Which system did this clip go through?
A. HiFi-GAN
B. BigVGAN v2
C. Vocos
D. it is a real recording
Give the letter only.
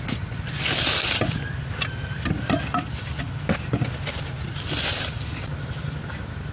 D